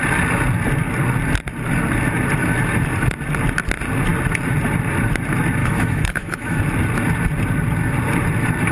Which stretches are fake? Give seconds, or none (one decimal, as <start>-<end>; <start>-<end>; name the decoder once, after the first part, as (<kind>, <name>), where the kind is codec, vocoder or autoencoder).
5.6-6.6 (autoencoder, DAC-VAE)